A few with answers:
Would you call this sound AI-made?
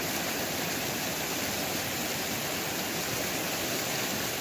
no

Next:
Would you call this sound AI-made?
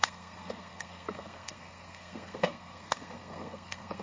yes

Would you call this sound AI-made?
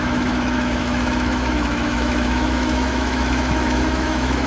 yes